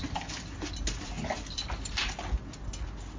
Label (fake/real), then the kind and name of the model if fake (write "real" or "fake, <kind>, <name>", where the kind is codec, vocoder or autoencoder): real